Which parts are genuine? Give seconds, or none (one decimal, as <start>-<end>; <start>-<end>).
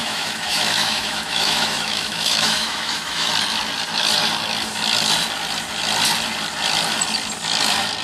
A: 3.3-8.0